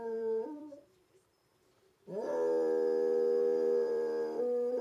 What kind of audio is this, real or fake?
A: fake